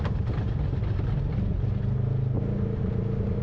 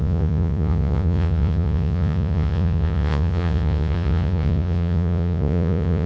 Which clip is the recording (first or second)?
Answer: first